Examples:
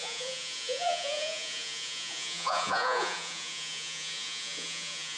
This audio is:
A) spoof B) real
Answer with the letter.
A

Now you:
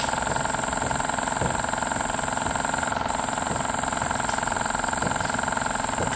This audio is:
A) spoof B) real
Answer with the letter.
B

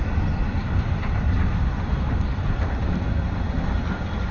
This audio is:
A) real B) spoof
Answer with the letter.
A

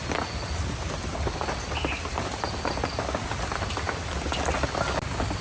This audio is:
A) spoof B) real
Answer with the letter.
B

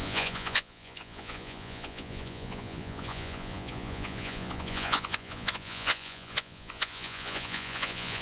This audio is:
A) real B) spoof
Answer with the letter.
B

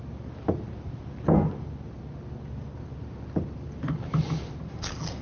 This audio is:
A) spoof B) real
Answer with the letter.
B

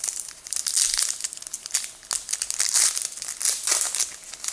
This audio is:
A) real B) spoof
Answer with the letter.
A